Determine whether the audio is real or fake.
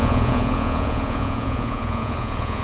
fake